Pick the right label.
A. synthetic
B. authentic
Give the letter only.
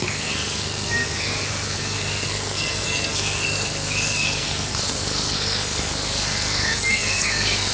A